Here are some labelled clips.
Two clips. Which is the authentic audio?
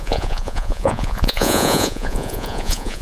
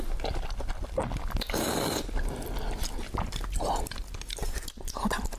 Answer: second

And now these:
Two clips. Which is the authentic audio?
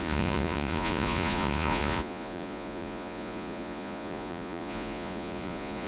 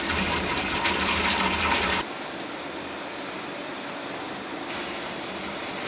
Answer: second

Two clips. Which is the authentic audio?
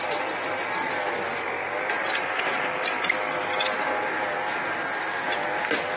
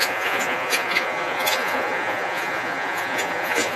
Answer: first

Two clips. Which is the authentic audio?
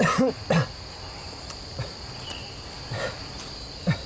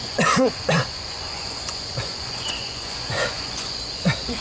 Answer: first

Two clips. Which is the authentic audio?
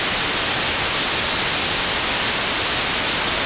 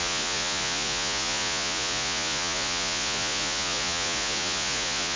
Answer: first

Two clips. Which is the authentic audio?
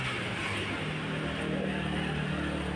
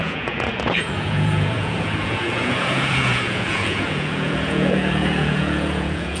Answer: first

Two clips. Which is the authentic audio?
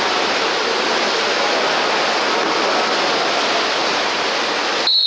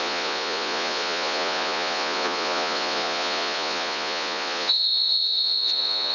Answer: first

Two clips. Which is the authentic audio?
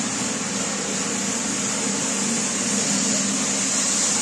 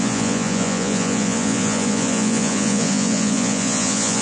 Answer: first